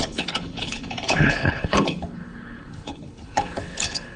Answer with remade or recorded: remade